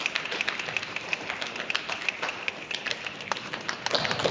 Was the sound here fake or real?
real